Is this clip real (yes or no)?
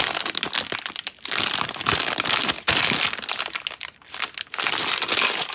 yes